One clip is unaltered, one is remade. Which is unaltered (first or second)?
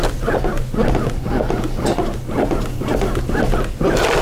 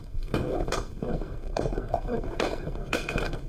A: first